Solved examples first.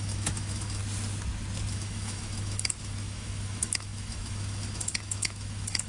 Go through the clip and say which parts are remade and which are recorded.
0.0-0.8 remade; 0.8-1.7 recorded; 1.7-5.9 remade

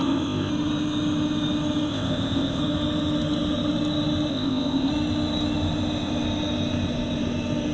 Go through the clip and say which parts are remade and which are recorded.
0.0-0.5 remade; 0.5-1.9 recorded; 1.9-2.6 remade; 2.6-4.3 recorded; 4.3-4.9 remade; 4.9-7.7 recorded

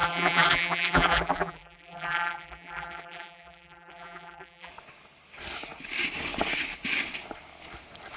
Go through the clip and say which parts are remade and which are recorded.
0.0-4.7 remade; 4.7-8.2 recorded

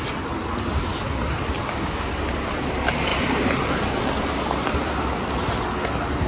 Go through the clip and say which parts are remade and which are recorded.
0.0-1.6 recorded; 1.6-2.1 remade; 2.1-6.3 recorded

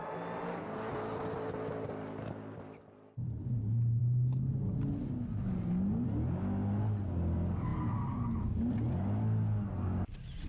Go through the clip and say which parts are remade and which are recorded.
0.0-10.5 recorded

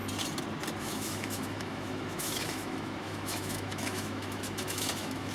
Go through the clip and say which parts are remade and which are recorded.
0.0-0.8 recorded; 0.8-5.3 remade

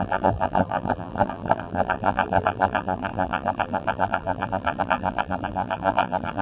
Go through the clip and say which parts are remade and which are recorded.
0.0-6.4 remade